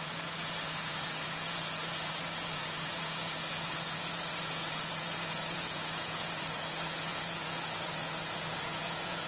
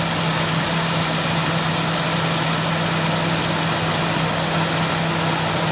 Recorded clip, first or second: second